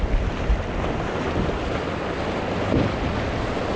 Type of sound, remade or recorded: recorded